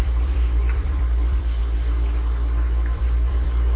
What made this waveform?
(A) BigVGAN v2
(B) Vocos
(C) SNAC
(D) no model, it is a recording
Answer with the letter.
A